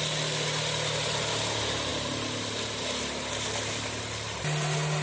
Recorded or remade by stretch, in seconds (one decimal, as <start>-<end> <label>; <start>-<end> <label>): 0.0-5.0 recorded